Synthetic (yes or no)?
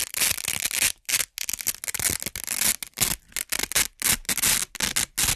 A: no